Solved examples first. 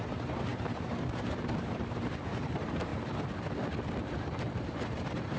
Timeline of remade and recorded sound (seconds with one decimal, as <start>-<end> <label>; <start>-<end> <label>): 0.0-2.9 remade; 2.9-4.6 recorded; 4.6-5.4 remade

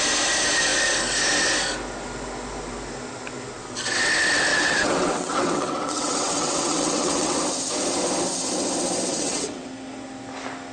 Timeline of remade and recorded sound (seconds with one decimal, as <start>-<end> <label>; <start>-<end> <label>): 0.0-4.5 recorded; 4.5-7.4 remade; 7.4-9.1 recorded; 9.1-9.7 remade; 9.7-10.7 recorded

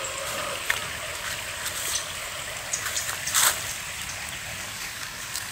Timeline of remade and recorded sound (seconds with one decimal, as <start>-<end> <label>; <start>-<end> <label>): 0.0-4.5 recorded; 4.5-5.5 remade

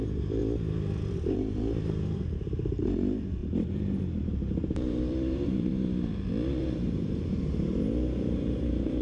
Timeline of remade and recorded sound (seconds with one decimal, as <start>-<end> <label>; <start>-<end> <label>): 0.0-0.4 remade; 0.4-1.0 recorded; 1.0-5.7 remade; 5.7-6.6 recorded; 6.6-9.0 remade

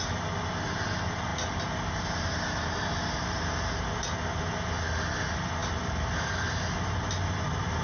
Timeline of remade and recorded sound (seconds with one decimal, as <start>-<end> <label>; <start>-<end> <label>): 0.0-7.8 recorded

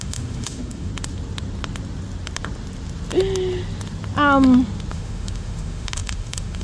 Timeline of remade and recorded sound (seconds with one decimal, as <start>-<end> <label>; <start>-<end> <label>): 0.0-0.9 remade; 0.9-4.9 recorded; 4.9-6.6 remade